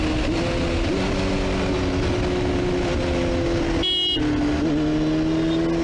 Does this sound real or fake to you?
real